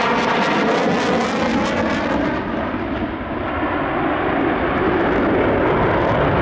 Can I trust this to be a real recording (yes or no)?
yes